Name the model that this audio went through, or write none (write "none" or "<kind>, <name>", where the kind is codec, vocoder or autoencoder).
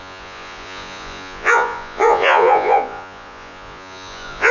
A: vocoder, Vocos